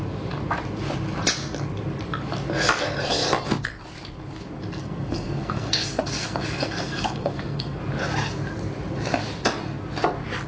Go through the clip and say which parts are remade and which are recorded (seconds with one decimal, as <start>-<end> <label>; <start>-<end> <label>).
0.0-4.8 recorded; 4.8-7.8 remade; 7.8-10.5 recorded